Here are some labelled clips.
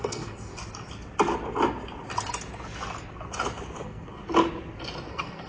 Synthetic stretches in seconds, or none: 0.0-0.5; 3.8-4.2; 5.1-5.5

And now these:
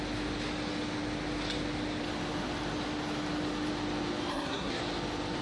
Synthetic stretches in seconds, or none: 4.3-4.8

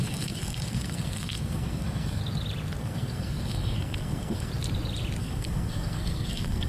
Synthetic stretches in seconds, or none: 0.0-2.2; 2.8-4.5; 5.2-6.7

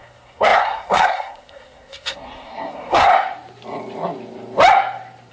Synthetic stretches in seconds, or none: 0.0-3.1

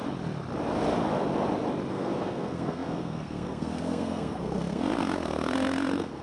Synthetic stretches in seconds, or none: 1.9-6.2

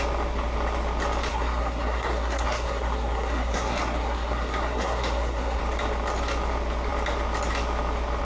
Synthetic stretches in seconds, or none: 1.3-5.6

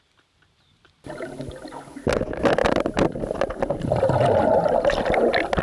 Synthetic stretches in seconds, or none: none